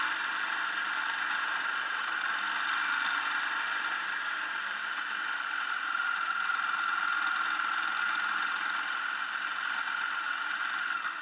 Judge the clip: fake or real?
real